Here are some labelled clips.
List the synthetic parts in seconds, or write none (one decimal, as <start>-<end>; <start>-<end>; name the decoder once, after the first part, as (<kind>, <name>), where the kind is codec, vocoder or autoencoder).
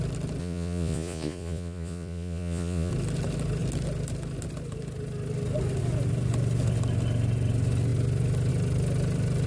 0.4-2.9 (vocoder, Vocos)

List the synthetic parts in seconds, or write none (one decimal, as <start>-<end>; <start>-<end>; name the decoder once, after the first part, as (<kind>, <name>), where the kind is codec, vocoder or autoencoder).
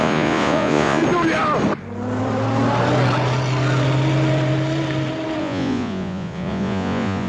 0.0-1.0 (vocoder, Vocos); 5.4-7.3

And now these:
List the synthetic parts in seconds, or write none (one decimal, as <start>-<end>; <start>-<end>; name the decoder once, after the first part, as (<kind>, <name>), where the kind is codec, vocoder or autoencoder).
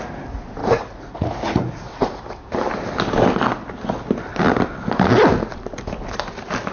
0.6-2.2 (vocoder, Vocos)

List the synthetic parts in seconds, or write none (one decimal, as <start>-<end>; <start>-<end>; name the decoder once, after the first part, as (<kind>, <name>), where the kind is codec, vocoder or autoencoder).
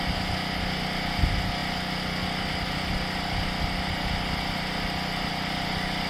none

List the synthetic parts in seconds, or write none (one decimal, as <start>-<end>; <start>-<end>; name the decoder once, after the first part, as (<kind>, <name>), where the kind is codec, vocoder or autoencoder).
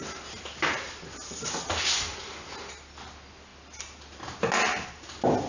none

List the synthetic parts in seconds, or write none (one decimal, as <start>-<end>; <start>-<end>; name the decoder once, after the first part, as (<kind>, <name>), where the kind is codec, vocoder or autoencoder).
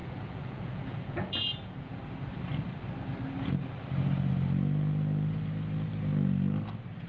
0.0-2.0 (vocoder, Vocos)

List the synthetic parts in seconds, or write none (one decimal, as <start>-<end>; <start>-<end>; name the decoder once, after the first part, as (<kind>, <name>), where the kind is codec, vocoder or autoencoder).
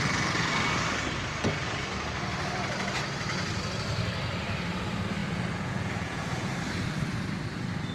5.2-6.5 (vocoder, Vocos)